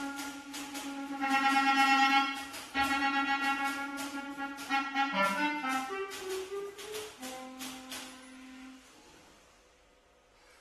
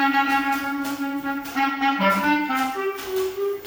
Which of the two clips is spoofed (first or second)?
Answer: second